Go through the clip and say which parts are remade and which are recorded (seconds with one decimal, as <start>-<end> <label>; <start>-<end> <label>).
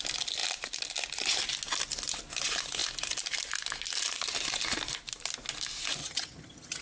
0.0-6.0 recorded; 6.0-6.8 remade